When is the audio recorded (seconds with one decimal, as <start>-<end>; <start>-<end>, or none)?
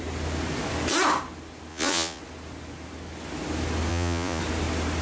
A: 0.0-1.7; 2.2-3.9; 4.4-5.0